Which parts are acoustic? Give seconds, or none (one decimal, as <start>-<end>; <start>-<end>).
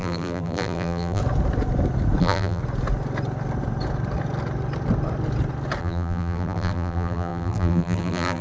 1.2-2.2; 2.6-5.8